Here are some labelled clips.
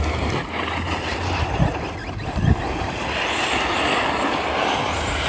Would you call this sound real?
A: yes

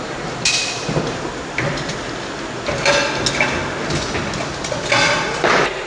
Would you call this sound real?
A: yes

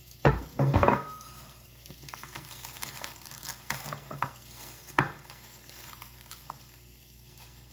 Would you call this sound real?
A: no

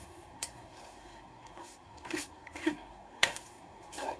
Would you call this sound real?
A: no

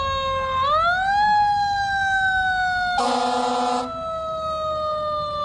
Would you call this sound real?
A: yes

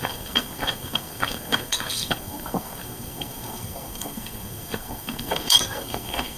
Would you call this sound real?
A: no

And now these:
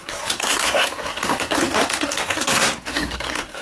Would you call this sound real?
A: no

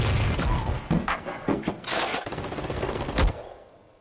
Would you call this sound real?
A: no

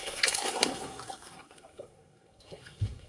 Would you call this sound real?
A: no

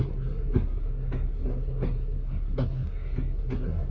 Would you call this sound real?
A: no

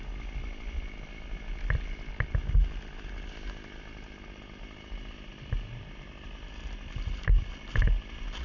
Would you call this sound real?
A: yes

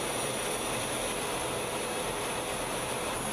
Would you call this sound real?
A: yes